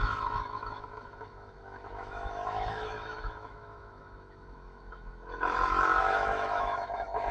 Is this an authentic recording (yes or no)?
no